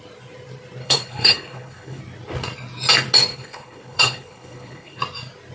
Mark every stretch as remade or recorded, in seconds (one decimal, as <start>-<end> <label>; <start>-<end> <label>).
0.0-0.8 recorded; 0.8-2.0 remade; 2.0-3.3 recorded; 3.3-5.0 remade; 5.0-5.5 recorded